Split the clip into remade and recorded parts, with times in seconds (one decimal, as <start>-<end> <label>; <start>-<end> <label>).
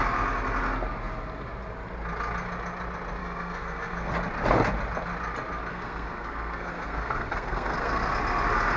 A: 0.0-3.2 recorded; 3.2-4.1 remade; 4.1-5.7 recorded; 5.7-8.1 remade; 8.1-8.8 recorded